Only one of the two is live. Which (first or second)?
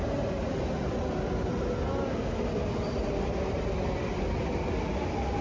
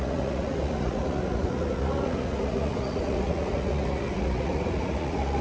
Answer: first